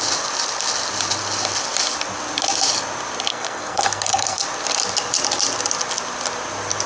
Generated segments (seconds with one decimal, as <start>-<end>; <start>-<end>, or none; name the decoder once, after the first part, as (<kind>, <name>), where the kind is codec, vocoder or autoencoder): 3.3-4.4 (codec, SNAC)